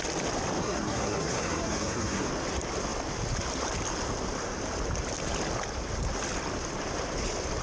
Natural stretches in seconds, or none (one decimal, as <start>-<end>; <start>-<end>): 0.0-0.6; 2.3-7.6